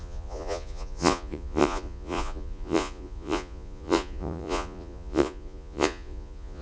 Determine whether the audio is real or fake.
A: fake